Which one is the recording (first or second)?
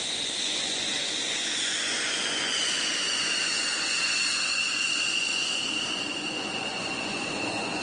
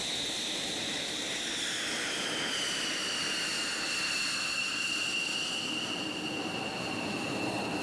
second